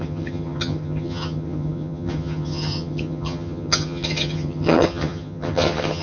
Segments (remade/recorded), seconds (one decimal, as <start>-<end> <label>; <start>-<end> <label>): 0.0-6.0 remade